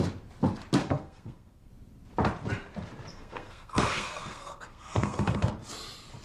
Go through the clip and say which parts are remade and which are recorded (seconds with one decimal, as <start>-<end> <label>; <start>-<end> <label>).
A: 0.0-0.8 recorded; 0.8-1.7 remade; 1.7-3.1 recorded; 3.1-5.5 remade; 5.5-6.2 recorded